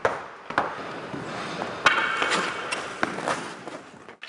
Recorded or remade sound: recorded